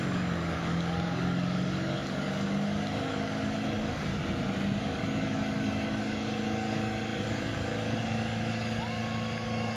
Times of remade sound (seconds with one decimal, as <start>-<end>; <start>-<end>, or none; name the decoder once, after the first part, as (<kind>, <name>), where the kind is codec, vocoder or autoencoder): 0.0-4.1 (codec, DAC); 4.8-9.8